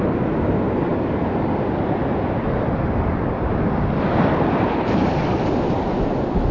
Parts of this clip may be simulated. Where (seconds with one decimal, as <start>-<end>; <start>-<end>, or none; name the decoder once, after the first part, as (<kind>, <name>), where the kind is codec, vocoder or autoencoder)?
none